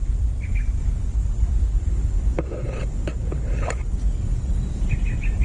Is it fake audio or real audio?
real